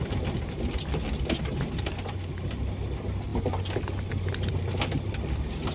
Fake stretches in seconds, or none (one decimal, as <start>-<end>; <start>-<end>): none